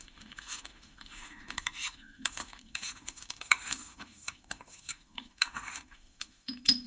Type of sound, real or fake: fake